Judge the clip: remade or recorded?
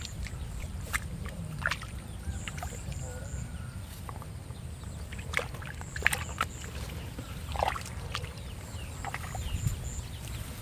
recorded